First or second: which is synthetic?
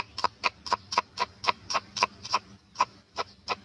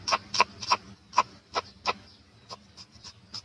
first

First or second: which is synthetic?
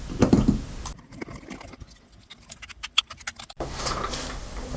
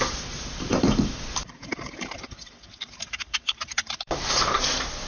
second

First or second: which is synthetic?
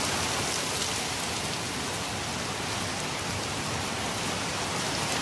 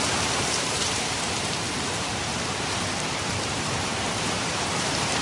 second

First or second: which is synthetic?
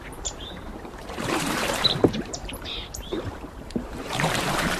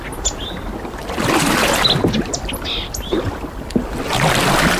first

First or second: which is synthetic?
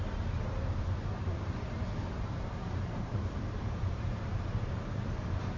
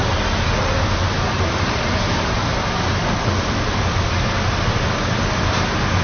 first